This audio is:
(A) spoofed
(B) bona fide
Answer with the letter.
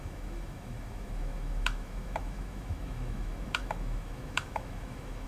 A